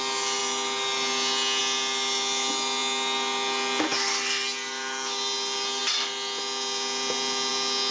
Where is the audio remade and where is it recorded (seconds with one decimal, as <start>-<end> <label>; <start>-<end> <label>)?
0.0-7.9 recorded